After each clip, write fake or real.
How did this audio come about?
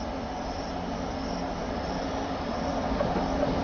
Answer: real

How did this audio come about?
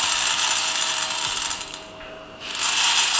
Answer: real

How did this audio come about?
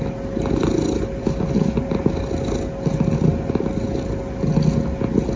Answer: real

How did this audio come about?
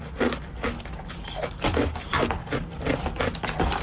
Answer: real